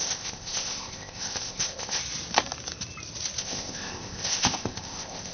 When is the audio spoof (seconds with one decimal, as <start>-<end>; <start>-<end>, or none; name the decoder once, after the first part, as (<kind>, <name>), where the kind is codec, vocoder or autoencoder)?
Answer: 0.0-2.0 (codec, ZipCodec); 3.4-5.3